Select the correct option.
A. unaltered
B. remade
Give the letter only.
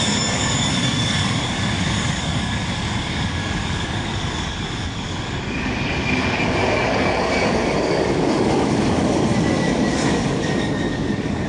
B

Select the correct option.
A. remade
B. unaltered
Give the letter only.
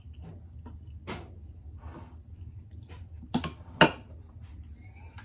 B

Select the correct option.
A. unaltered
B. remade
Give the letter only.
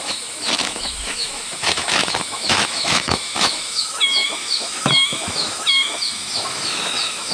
B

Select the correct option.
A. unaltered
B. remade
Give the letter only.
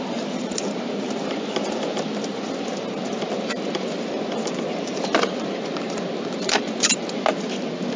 A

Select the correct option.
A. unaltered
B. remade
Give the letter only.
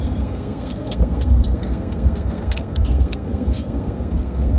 B